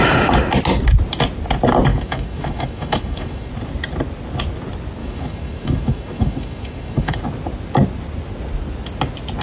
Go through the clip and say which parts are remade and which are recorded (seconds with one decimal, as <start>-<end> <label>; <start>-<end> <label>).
0.0-1.9 recorded; 1.9-3.5 remade; 3.5-5.0 recorded; 5.0-7.2 remade; 7.2-9.4 recorded

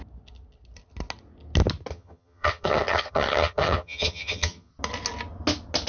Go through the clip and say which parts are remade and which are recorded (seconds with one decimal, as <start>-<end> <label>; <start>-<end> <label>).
0.0-1.9 recorded; 1.9-4.7 remade; 4.7-5.9 recorded

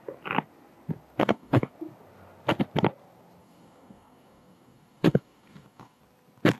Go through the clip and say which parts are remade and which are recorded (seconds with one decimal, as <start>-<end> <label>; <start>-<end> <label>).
0.0-1.2 recorded; 1.2-1.7 remade; 1.7-3.4 recorded; 3.4-6.0 remade; 6.0-6.6 recorded